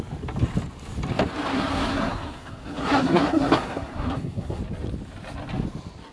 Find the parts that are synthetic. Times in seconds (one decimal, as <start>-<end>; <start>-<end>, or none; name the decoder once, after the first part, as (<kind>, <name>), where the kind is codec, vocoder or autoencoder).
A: 1.5-4.6 (codec, SNAC)